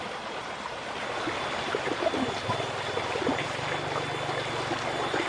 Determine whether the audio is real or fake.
real